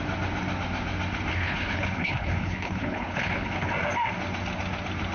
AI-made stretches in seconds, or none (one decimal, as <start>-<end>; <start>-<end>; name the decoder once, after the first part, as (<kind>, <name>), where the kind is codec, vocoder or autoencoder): 1.3-3.7 (codec, HILCodec)